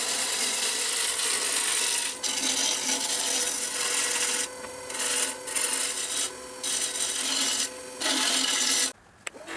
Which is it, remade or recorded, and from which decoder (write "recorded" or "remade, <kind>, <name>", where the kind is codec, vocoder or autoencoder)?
recorded